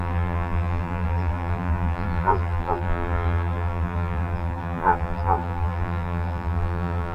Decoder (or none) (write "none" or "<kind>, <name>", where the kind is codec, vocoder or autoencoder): vocoder, BigVGAN v2